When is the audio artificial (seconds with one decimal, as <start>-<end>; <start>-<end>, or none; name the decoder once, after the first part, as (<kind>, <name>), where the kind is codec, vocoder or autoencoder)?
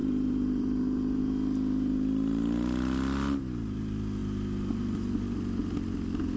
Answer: 0.0-1.2 (vocoder, BigVGAN v2)